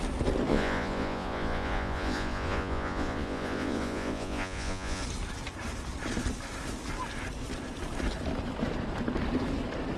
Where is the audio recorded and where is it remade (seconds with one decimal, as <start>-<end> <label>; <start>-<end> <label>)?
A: 0.0-0.5 recorded; 0.5-5.0 remade; 5.0-10.0 recorded